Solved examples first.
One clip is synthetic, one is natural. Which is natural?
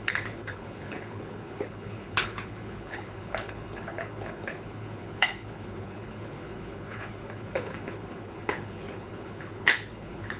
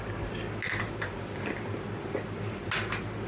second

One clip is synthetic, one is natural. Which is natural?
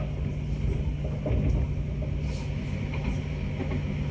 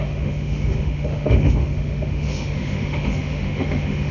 first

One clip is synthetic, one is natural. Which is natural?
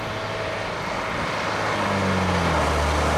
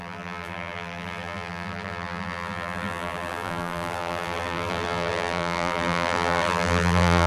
first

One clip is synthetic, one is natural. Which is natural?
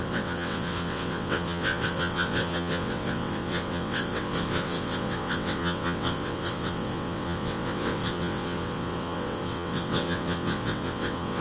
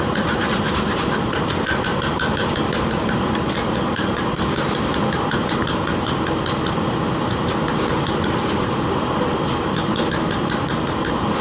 second